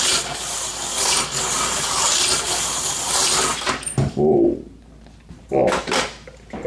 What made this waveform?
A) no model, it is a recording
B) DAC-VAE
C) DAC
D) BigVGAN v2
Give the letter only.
D